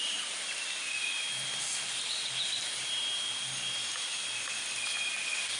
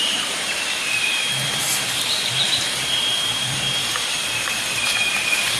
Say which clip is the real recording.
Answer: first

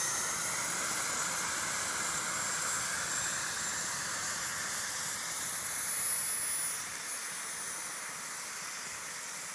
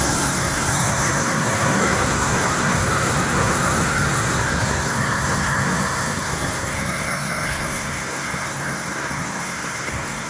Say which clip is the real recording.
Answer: first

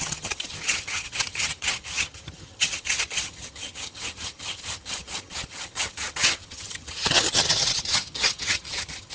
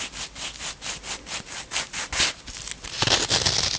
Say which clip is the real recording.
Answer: second